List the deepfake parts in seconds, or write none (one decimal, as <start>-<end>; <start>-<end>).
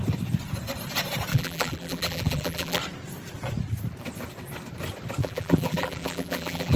1.3-2.8; 5.2-6.8